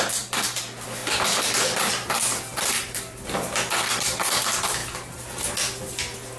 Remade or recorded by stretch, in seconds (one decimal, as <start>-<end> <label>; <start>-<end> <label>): 0.0-2.3 recorded; 2.3-3.2 remade; 3.2-6.4 recorded

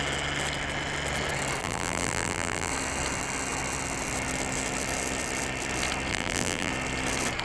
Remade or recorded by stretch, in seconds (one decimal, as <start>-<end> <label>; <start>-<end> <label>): 0.0-1.6 recorded; 1.6-2.7 remade; 2.7-6.1 recorded; 6.1-6.7 remade; 6.7-7.4 recorded